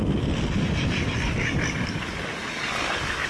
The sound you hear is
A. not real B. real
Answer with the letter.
B